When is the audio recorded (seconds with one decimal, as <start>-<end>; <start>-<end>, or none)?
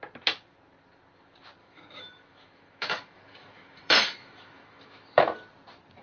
0.0-1.6; 5.2-6.0